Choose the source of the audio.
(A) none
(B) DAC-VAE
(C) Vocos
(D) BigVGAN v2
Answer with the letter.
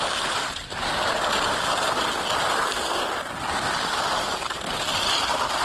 A